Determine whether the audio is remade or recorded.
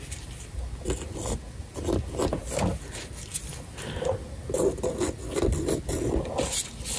recorded